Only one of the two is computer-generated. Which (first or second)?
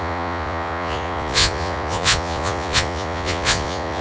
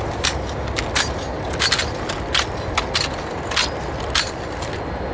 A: first